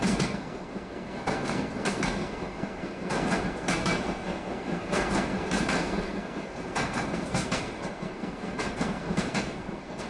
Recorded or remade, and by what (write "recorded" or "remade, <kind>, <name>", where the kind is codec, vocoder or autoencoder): remade, codec, SNAC